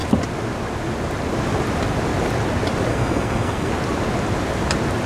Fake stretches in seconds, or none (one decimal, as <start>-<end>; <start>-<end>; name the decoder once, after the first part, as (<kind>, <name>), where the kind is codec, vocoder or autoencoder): 2.9-3.7 (codec, SNAC)